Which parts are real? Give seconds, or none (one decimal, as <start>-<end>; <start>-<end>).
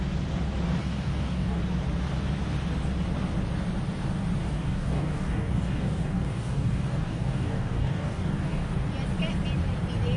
0.0-0.8; 1.6-4.4; 8.7-10.2